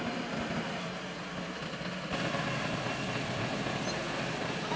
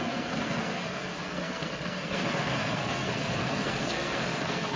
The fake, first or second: second